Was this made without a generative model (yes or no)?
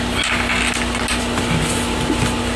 yes